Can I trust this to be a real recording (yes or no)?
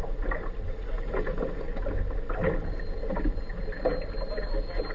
yes